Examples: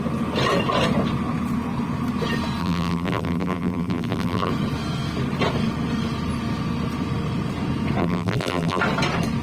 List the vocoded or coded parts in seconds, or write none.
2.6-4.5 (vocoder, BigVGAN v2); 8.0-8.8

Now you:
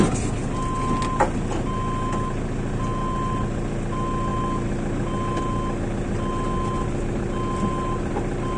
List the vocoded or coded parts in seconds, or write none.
none

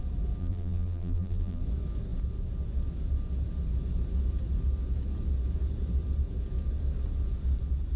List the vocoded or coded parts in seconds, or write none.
0.4-1.6 (vocoder, BigVGAN v2)

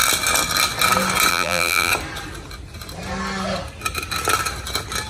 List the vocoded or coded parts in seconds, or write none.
1.3-1.9 (vocoder, BigVGAN v2)

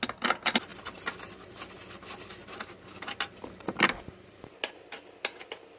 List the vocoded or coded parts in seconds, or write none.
0.7-1.3 (vocoder, BigVGAN v2); 2.4-4.1

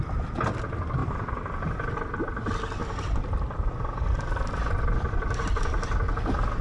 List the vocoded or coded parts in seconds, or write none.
1.0-2.2 (vocoder, BigVGAN v2); 2.8-6.6

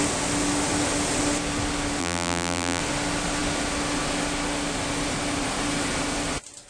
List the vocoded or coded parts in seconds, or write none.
2.0-2.8 (vocoder, BigVGAN v2)

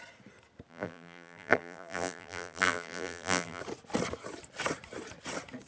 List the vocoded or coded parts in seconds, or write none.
0.7-3.6 (vocoder, BigVGAN v2)